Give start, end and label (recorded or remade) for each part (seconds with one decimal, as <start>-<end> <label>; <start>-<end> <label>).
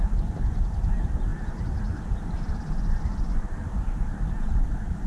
0.0-5.1 recorded